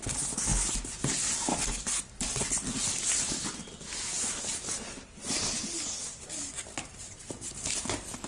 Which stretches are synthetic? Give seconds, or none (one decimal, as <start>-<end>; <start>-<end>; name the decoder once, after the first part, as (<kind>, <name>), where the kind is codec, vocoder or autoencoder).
none